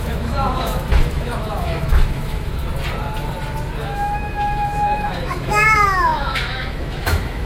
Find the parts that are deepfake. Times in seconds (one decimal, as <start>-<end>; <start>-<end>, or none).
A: 0.0-2.6; 3.8-7.5